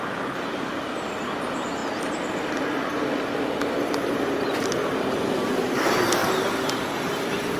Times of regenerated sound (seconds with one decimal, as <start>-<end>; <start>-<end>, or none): none